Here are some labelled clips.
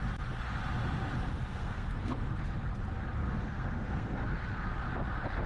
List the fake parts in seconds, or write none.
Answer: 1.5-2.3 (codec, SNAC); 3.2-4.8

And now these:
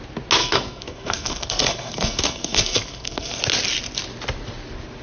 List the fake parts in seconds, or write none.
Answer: 0.4-3.4 (codec, SNAC)

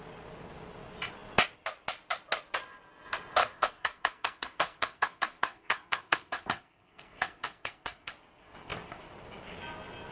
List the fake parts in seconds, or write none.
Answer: 3.4-8.1 (codec, SNAC)